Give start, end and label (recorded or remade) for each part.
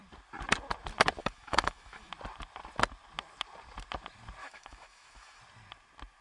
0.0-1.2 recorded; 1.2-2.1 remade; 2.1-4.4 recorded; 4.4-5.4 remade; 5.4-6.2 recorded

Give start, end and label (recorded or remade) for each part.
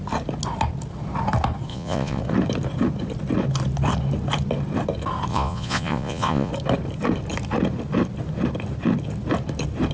0.0-1.7 recorded; 1.7-2.2 remade; 2.2-5.3 recorded; 5.3-6.5 remade; 6.5-9.9 recorded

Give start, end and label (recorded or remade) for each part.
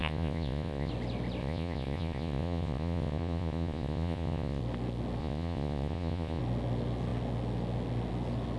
0.0-0.9 remade; 0.9-1.4 recorded; 1.4-4.6 remade; 4.6-5.2 recorded; 5.2-6.4 remade; 6.4-8.6 recorded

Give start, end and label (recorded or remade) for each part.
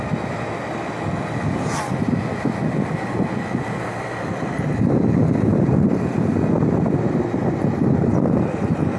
0.0-9.0 recorded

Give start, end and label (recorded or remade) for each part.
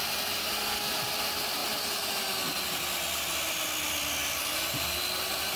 0.0-0.4 recorded; 0.4-0.9 remade; 0.9-5.6 recorded